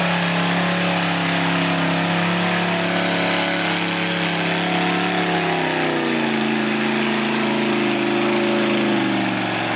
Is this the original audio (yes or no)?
yes